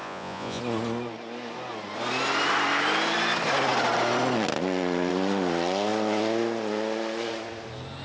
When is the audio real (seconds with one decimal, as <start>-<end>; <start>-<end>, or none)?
0.6-8.0